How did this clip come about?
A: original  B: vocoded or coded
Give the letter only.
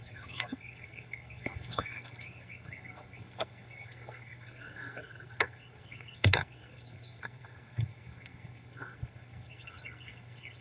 B